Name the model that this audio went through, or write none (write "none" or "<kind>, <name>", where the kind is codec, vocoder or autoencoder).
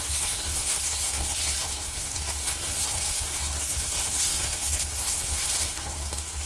codec, SNAC